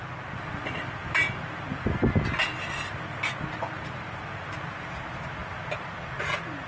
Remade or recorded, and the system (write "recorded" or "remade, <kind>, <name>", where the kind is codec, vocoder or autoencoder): recorded